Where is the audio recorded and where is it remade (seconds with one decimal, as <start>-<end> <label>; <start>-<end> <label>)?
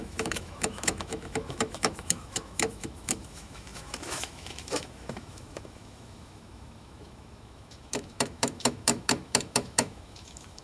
0.0-10.6 remade